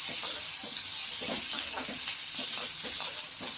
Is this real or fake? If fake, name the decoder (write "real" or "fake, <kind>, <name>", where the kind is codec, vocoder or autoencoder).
real